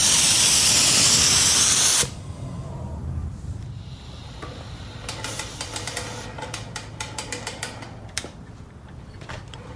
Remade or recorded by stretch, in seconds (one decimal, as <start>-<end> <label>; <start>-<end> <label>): 0.0-2.0 recorded; 2.0-9.8 remade